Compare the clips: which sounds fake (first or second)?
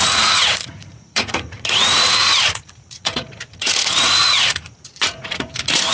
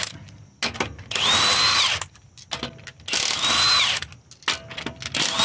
first